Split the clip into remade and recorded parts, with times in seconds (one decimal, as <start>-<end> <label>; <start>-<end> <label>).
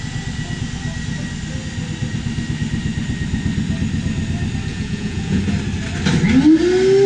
0.0-4.7 recorded; 4.7-5.4 remade; 5.4-7.1 recorded